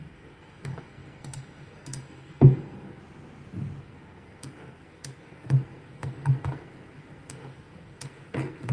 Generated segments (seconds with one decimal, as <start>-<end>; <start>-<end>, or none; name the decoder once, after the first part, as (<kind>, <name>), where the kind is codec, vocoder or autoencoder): 0.0-3.0 (codec, SNAC); 3.8-8.7